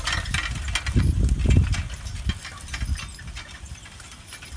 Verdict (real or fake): real